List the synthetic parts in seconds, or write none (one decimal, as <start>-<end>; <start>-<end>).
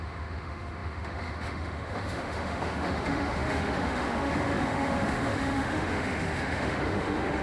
0.0-7.4